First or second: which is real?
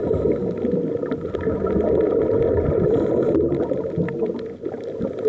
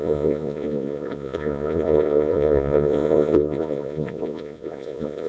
first